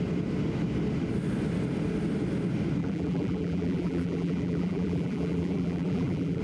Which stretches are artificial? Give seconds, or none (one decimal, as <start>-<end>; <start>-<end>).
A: 2.8-6.4